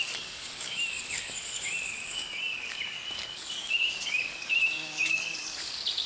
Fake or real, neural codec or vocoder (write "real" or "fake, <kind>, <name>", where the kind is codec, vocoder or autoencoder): fake, codec, DAC